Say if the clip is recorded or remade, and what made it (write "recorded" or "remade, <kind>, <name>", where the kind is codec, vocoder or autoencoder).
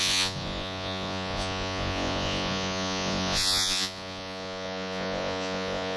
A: remade, vocoder, Vocos